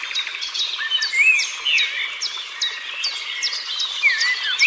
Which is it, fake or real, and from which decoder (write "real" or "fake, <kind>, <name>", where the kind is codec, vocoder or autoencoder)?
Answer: real